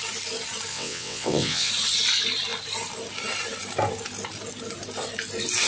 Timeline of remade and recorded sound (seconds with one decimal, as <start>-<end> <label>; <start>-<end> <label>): 0.0-0.7 recorded; 0.7-1.7 remade; 1.7-5.7 recorded